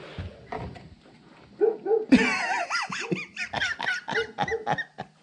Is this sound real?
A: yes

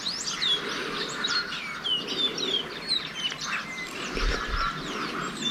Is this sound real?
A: yes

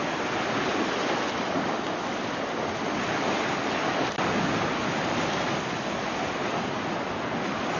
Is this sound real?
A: yes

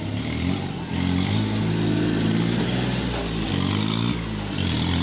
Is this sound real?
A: yes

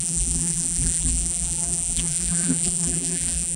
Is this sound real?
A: no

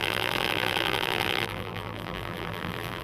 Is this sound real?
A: no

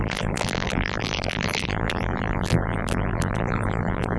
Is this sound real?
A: no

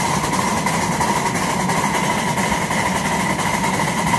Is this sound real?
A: yes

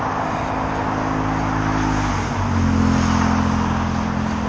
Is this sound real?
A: yes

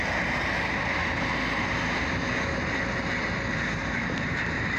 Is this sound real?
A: yes